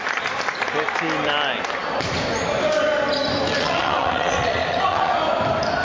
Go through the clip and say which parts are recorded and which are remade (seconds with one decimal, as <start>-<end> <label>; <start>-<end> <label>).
0.0-3.5 recorded; 3.5-5.1 remade; 5.1-5.8 recorded